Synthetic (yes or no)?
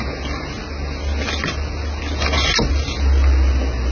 no